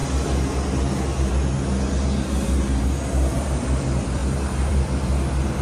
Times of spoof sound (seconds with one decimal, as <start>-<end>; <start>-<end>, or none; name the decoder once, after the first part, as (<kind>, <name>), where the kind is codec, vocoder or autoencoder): 3.4-4.2 (vocoder, BigVGAN v2); 4.7-5.6